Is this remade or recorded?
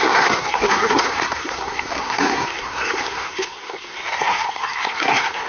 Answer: remade